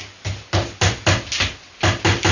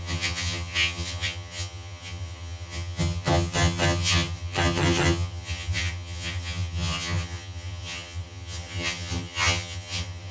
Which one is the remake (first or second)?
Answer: second